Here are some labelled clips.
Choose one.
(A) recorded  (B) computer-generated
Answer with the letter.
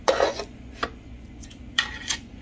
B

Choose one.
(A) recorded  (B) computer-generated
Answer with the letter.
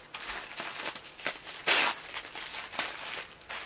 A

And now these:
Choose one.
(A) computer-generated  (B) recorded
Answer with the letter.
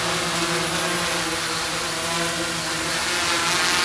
B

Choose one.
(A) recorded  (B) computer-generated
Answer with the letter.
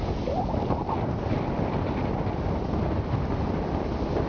A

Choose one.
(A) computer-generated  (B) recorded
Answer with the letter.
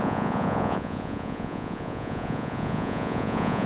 A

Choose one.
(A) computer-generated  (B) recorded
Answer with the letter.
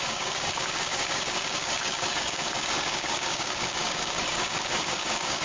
A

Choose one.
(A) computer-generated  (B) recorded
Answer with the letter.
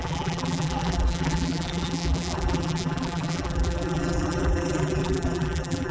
A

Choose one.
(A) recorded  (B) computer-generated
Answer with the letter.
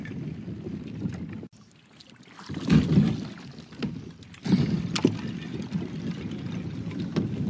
A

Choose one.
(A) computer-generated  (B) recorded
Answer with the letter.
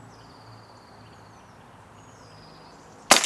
B